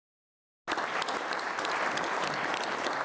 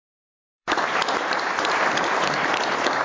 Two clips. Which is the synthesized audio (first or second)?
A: second